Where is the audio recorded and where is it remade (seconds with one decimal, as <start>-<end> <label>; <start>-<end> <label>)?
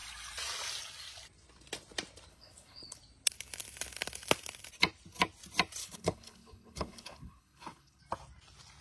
0.0-2.3 recorded; 2.3-3.0 remade; 3.0-5.8 recorded; 5.8-8.0 remade; 8.0-8.8 recorded